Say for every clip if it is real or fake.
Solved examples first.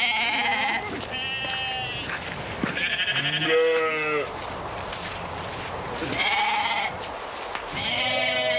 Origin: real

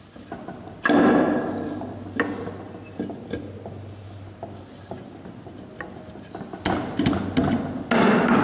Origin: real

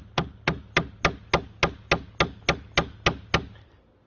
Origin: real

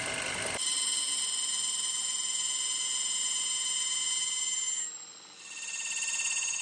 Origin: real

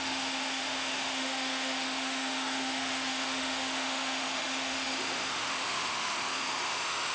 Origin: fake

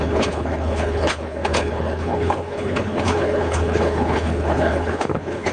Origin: fake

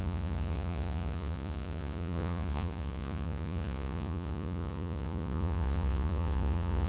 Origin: fake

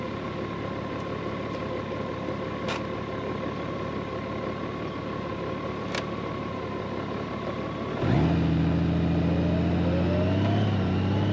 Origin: real